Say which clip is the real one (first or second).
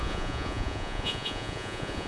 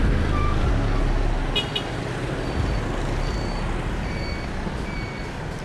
second